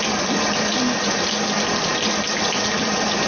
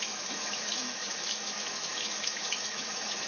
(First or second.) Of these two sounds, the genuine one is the first